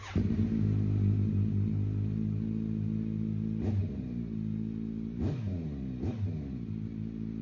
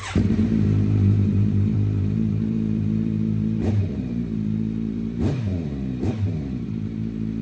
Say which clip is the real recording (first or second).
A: first